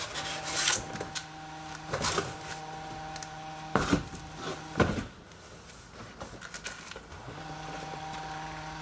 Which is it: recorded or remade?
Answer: recorded